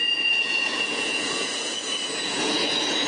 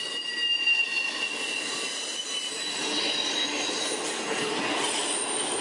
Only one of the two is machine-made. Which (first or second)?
first